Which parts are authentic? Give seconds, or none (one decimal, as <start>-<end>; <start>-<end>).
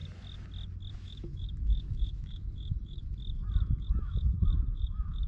0.0-0.9; 3.0-3.6